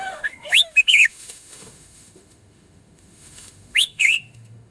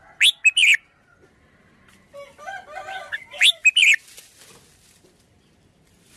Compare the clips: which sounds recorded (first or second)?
second